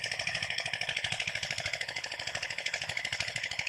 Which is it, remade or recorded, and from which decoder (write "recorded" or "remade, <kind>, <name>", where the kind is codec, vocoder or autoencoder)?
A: remade, codec, HILCodec